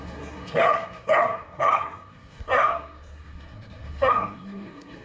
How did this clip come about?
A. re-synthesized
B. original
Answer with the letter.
A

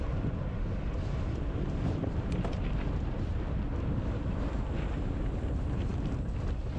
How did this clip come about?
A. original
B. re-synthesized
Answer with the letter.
A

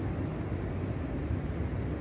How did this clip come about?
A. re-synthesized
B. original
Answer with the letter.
B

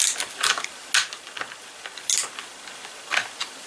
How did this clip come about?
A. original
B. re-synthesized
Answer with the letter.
A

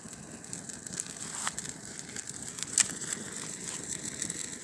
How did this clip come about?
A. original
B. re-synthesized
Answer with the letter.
A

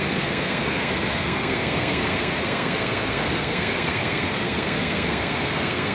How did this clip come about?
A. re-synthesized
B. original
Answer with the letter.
A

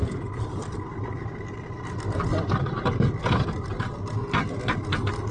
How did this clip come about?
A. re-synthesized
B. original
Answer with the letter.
B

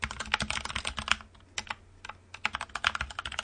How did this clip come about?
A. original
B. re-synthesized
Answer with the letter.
A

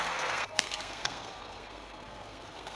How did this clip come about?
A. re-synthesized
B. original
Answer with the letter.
A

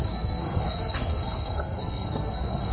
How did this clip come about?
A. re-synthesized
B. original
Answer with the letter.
A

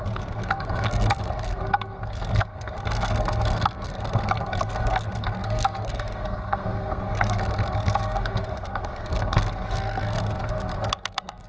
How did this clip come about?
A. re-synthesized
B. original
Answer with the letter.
A